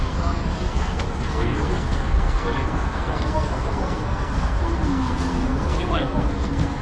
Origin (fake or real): fake